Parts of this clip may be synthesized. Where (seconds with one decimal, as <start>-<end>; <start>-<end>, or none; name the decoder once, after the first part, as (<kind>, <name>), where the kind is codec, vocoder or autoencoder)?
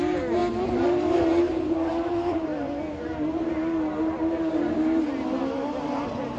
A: 0.0-5.1 (vocoder, BigVGAN v2); 5.7-6.4